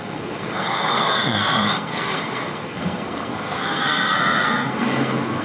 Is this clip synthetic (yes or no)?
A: yes